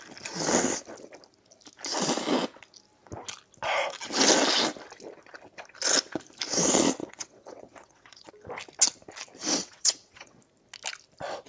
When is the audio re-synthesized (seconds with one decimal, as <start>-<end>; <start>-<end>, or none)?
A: 7.0-8.3; 9.6-10.4